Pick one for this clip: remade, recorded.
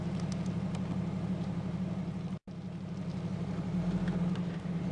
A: recorded